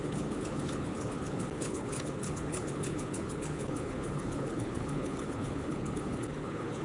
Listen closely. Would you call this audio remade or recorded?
remade